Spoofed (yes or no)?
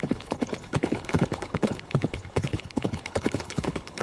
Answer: yes